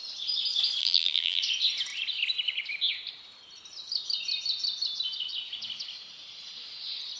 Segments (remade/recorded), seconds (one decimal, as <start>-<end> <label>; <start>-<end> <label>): 0.0-0.8 recorded; 0.8-1.4 remade; 1.4-7.2 recorded